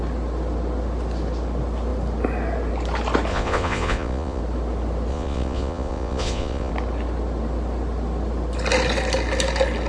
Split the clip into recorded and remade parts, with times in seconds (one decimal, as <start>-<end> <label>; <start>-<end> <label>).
0.0-3.3 recorded; 3.3-4.4 remade; 4.4-5.1 recorded; 5.1-6.7 remade; 6.7-9.9 recorded

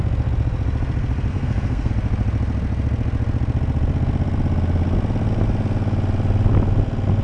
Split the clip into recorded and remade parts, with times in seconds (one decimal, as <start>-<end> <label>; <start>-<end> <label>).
0.0-1.3 recorded; 1.3-1.9 remade; 1.9-7.2 recorded

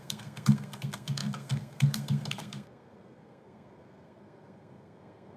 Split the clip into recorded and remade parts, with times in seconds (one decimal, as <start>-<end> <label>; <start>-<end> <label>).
0.0-5.4 remade

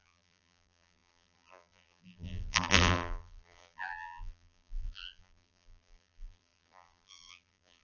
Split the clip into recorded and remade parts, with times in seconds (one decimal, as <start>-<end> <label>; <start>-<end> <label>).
0.0-7.8 remade

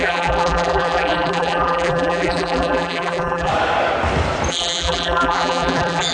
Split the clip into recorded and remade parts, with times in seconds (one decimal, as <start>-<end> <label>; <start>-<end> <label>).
0.0-3.5 remade; 3.5-4.5 recorded; 4.5-6.1 remade

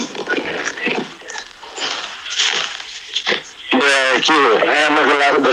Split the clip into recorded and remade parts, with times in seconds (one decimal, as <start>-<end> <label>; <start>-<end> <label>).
0.0-4.8 recorded; 4.8-5.5 remade

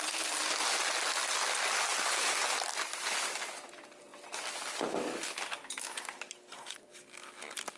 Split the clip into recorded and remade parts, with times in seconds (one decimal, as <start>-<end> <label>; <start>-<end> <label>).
0.0-7.8 recorded

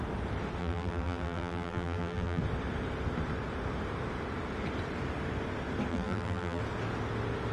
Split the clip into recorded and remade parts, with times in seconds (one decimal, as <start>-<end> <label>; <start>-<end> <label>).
0.0-0.6 recorded; 0.6-2.4 remade; 2.4-5.9 recorded; 5.9-6.6 remade; 6.6-7.5 recorded